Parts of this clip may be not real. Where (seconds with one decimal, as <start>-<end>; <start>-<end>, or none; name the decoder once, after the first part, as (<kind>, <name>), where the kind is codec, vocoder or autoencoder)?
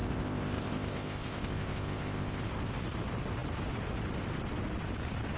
0.0-2.4 (codec, ZipCodec)